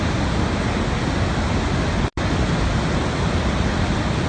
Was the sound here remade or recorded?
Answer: recorded